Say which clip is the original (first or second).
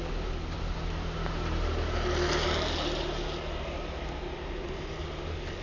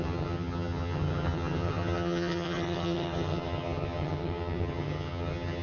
first